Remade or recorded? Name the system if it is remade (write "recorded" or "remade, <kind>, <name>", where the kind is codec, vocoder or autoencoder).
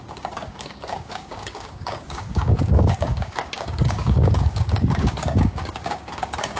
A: remade, codec, DAC